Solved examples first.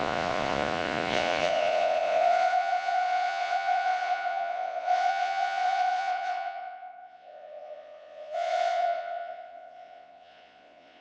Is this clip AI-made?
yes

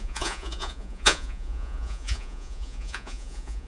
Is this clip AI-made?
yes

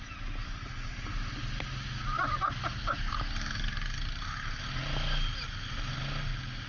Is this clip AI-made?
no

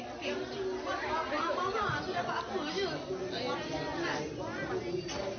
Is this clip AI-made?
no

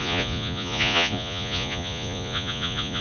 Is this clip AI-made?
yes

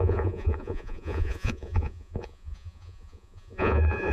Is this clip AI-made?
yes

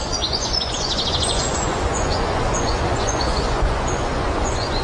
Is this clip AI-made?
yes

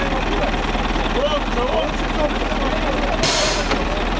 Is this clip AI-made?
no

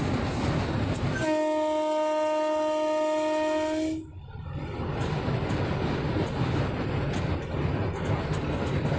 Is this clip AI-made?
no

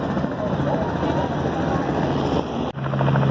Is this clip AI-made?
no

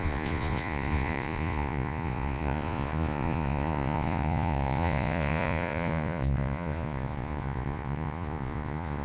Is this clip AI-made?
yes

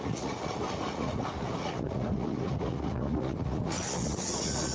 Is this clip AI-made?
yes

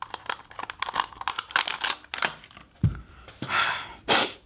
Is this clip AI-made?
no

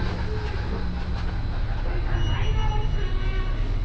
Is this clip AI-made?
no